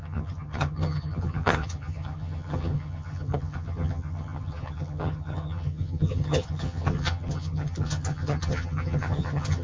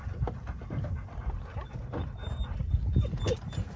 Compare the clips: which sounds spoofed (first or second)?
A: first